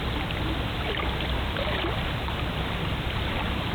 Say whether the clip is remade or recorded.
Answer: recorded